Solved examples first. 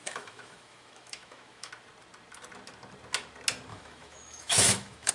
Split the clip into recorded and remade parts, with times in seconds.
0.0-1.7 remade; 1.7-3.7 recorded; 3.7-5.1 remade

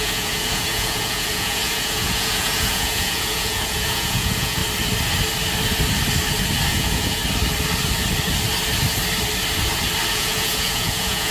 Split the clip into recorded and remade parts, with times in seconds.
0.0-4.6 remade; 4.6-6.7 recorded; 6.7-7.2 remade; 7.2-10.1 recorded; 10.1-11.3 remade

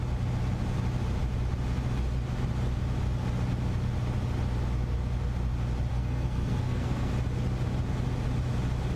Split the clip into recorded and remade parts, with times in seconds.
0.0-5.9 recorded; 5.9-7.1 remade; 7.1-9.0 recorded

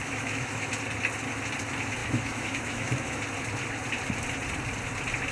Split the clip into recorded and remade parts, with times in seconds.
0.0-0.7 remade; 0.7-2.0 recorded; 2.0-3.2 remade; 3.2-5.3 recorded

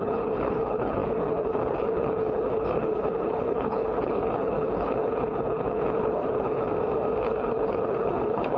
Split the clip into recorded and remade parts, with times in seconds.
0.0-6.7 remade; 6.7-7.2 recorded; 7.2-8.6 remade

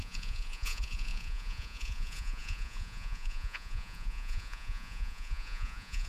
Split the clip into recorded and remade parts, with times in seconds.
0.0-6.1 remade

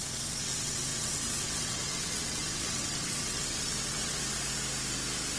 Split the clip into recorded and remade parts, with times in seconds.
0.0-4.2 remade; 4.2-5.4 recorded